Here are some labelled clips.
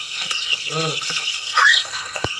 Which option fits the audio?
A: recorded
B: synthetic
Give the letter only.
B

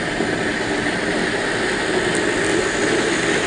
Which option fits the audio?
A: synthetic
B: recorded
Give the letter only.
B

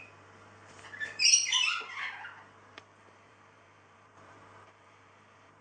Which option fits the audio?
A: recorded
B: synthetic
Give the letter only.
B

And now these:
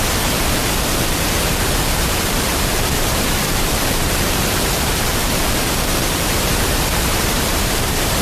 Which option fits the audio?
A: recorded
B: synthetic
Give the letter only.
B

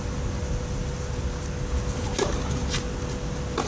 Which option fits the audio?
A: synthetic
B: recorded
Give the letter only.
B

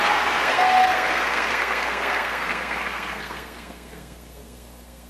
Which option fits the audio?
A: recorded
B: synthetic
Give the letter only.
B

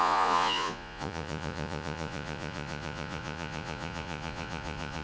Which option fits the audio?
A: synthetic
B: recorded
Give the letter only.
A